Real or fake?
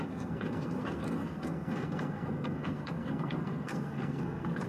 fake